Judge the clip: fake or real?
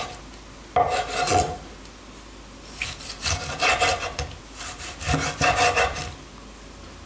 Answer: real